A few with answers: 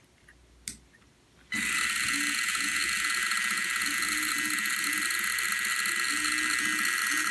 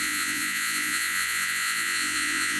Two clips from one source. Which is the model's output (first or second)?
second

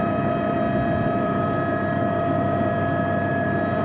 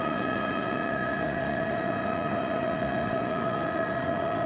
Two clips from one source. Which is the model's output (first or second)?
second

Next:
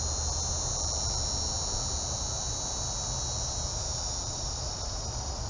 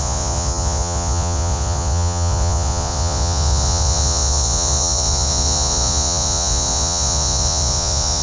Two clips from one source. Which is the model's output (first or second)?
second